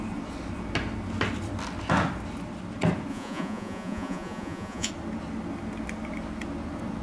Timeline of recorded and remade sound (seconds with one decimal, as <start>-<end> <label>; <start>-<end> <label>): 0.0-3.1 recorded; 3.1-4.9 remade; 4.9-7.0 recorded